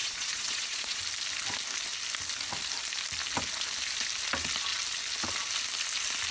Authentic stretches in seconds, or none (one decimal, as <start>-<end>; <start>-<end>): 1.0-6.3